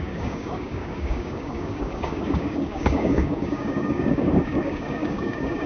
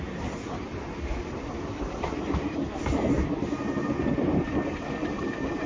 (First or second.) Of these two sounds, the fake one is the first